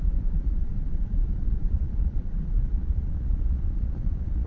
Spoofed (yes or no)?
yes